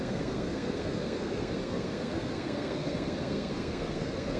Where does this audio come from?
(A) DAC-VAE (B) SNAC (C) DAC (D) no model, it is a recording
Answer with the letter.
B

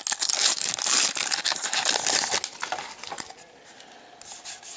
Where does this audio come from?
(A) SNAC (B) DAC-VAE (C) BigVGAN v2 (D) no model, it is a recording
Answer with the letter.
D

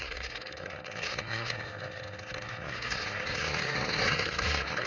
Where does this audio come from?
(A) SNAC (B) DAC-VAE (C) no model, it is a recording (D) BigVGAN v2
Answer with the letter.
A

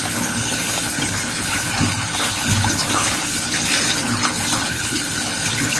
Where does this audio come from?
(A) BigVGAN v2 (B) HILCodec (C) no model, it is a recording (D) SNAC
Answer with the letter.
B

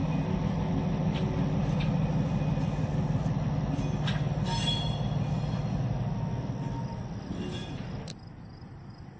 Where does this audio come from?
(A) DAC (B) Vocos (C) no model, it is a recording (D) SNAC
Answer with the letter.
C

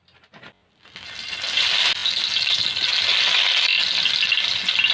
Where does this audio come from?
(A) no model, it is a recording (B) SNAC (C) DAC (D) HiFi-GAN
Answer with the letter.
A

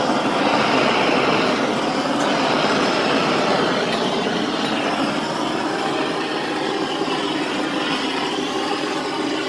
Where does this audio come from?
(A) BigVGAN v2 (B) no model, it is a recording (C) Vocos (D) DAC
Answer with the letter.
B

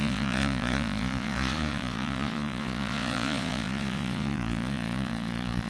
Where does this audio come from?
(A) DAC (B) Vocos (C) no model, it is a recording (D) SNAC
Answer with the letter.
B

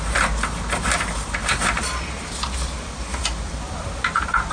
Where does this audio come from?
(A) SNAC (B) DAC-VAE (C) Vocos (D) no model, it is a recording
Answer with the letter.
D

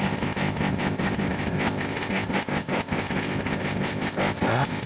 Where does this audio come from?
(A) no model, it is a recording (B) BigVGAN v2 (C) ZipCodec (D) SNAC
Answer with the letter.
C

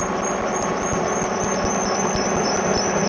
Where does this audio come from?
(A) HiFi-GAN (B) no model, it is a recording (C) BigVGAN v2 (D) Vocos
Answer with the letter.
B